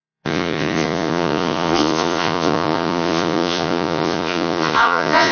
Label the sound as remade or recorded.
remade